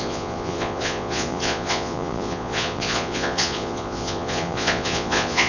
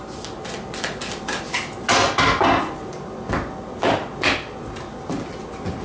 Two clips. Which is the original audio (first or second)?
second